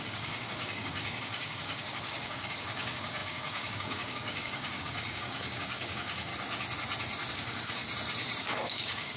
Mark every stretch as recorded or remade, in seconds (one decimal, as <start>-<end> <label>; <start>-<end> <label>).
0.0-6.3 remade; 6.3-7.3 recorded; 7.3-7.8 remade; 7.8-8.4 recorded; 8.4-9.2 remade